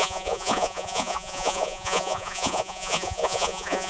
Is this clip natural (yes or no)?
no